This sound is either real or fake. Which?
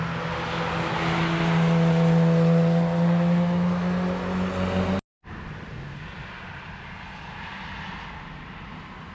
real